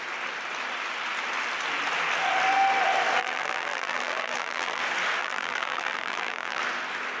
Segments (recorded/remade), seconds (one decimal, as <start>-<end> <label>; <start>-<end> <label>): 0.0-3.2 recorded; 3.2-4.8 remade; 4.8-5.2 recorded; 5.2-6.6 remade; 6.6-7.2 recorded